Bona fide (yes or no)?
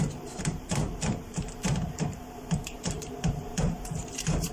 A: no